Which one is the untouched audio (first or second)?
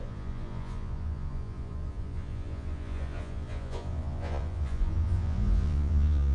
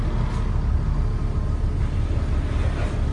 second